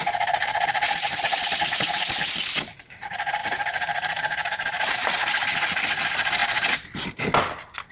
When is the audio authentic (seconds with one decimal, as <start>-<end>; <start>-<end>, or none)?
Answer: 0.0-1.5; 2.3-3.4; 4.9-7.9